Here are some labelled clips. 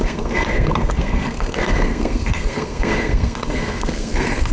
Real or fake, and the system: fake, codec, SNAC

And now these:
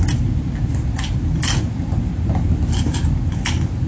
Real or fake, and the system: real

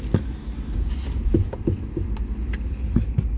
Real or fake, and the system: real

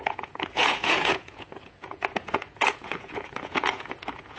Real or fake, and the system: fake, vocoder, Vocos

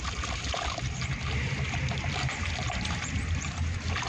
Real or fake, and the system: fake, vocoder, BigVGAN v2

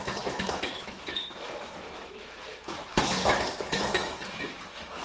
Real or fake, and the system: fake, autoencoder, DAC-VAE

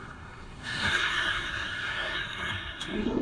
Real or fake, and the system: fake, codec, SNAC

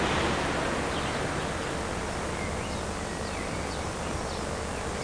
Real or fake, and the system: real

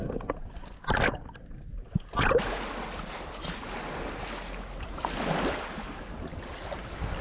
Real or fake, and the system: real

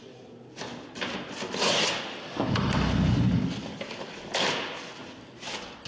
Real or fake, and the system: real